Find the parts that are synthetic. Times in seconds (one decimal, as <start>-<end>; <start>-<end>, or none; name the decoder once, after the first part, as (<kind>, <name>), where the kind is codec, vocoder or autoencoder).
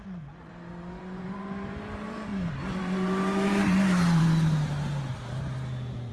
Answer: 0.0-5.1 (vocoder, BigVGAN v2)